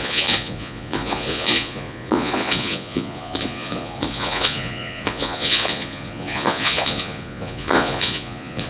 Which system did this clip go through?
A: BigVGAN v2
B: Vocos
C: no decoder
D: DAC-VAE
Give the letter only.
B